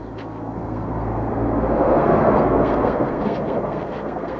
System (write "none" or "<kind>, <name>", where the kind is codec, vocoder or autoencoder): codec, SNAC